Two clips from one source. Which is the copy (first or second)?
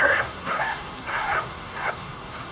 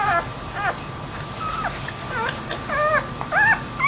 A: first